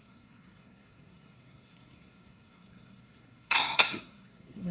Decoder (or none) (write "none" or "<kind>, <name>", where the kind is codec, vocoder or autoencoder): codec, SNAC